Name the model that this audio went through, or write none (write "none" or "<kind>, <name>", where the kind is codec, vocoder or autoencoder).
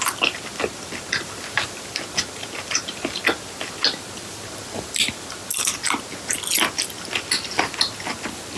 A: none